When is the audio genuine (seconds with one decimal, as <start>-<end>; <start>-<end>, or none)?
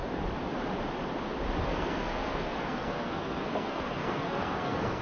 0.0-1.7